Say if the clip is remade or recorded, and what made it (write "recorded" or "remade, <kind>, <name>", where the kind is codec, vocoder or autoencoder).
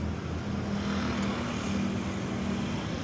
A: recorded